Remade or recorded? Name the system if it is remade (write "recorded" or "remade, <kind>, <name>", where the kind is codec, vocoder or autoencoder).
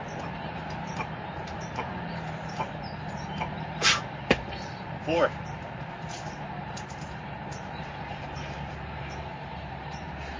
remade, vocoder, BigVGAN v2